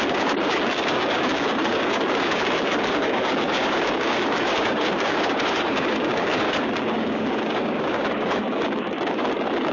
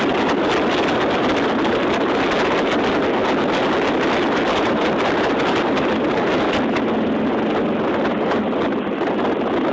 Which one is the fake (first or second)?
first